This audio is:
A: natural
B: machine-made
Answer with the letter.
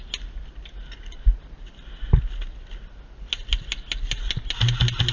A